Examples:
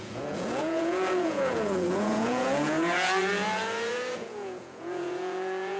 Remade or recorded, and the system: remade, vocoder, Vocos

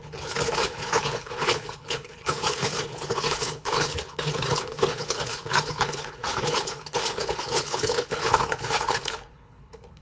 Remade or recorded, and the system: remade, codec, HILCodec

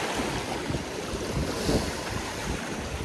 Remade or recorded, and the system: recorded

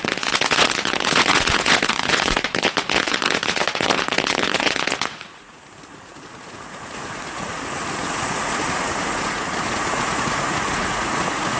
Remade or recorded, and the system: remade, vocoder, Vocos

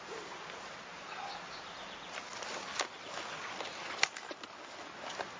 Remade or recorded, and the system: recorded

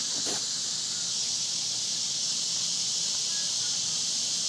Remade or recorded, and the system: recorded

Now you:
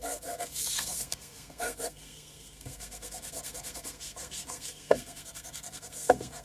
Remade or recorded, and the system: remade, codec, SNAC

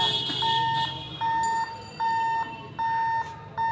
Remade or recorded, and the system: recorded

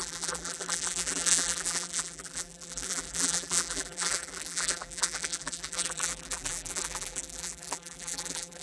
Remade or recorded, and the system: remade, vocoder, BigVGAN v2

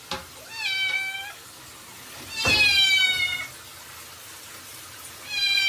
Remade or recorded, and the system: recorded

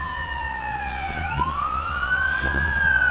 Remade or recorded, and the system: remade, vocoder, Vocos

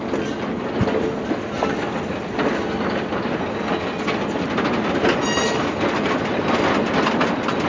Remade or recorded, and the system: recorded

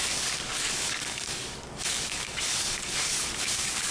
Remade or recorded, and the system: remade, codec, DAC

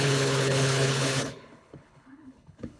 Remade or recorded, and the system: remade, codec, HILCodec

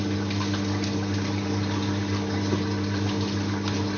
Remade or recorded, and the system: recorded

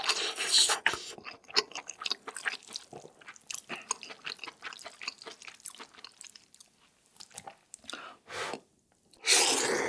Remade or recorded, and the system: recorded